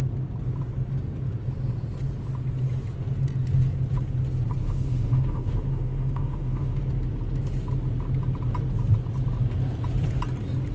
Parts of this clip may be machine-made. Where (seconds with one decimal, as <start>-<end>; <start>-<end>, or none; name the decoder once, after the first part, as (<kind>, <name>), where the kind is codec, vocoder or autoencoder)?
4.6-6.8 (autoencoder, DAC-VAE)